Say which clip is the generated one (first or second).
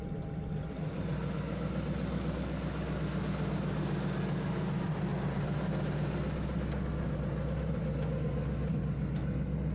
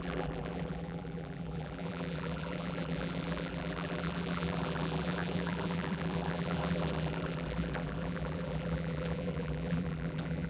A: second